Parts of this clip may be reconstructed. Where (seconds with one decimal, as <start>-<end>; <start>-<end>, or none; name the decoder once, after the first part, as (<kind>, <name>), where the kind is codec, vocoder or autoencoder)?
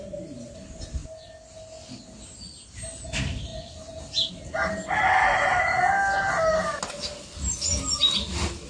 none